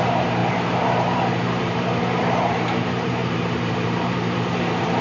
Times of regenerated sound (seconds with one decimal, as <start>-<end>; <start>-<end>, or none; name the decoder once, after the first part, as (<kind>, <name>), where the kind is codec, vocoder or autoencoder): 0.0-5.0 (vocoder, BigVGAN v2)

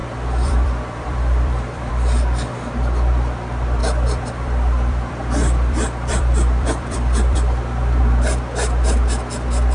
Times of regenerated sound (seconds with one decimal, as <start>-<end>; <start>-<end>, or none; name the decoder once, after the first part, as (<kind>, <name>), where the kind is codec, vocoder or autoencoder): 0.0-1.9 (vocoder, BigVGAN v2); 3.8-8.0

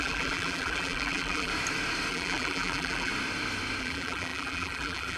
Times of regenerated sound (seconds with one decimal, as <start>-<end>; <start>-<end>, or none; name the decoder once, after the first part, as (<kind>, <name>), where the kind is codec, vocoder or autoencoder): 0.0-1.5 (vocoder, BigVGAN v2); 2.1-3.1; 3.8-5.2